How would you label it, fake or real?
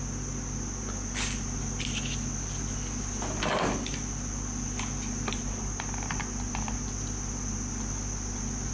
real